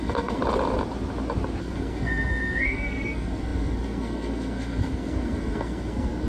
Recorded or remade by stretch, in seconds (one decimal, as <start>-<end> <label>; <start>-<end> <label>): 0.0-0.4 remade; 0.4-1.6 recorded; 1.6-6.3 remade